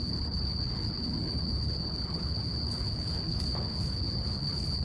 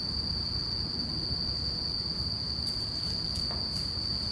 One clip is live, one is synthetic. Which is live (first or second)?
second